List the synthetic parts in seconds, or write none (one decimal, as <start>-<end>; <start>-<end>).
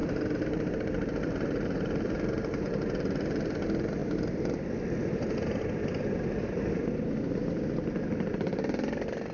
0.0-2.6; 4.0-4.6